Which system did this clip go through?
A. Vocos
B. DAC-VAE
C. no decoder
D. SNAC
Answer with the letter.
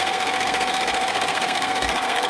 D